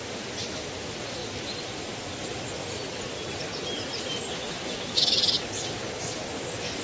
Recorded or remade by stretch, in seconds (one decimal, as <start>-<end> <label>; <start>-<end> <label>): 0.0-6.8 recorded